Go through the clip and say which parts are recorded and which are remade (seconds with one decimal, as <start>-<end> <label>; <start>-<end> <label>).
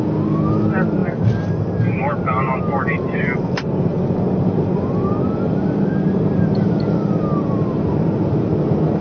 0.0-9.0 remade